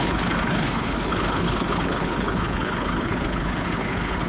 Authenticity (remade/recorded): remade